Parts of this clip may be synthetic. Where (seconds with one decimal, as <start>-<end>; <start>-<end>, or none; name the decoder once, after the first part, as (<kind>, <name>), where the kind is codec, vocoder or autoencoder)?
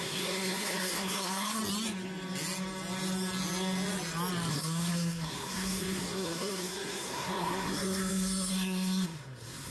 0.0-1.6 (codec, SNAC); 4.5-9.7